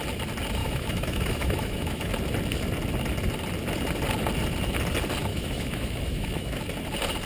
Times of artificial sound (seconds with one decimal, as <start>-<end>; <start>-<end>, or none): 0.6-2.1; 5.3-6.6